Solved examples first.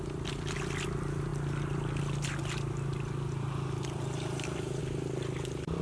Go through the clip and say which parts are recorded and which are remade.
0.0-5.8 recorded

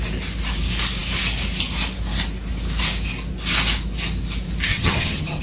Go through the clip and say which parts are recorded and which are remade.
0.0-4.7 recorded; 4.7-5.4 remade

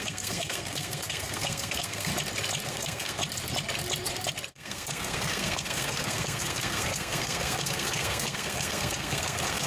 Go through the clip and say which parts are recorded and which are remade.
0.0-2.1 remade; 2.1-2.7 recorded; 2.7-3.2 remade; 3.2-4.5 recorded; 4.5-9.7 remade

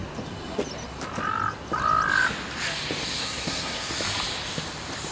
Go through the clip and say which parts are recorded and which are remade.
0.0-3.2 recorded; 3.2-3.9 remade; 3.9-5.1 recorded

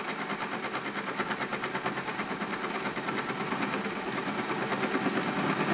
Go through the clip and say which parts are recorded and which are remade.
0.0-5.7 recorded

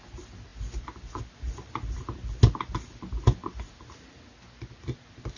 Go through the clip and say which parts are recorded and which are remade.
0.0-5.4 recorded

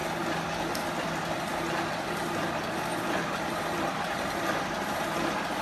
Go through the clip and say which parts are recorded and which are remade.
0.0-1.9 recorded; 1.9-5.6 remade

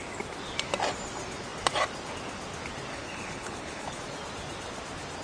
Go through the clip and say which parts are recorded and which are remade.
0.0-2.9 recorded; 2.9-4.0 remade; 4.0-5.2 recorded